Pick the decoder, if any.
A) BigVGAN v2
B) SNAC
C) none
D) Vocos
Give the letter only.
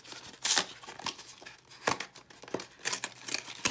C